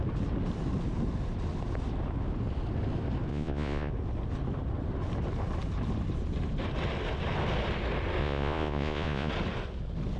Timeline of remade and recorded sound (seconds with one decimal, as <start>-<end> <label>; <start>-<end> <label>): 0.0-3.3 recorded; 3.3-3.9 remade; 3.9-8.2 recorded; 8.2-9.3 remade; 9.3-10.2 recorded